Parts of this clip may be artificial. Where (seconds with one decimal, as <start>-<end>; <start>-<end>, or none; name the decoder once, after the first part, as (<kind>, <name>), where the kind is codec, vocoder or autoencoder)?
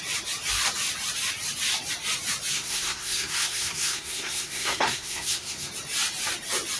2.5-5.7 (codec, SNAC)